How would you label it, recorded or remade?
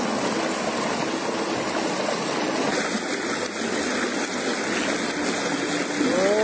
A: recorded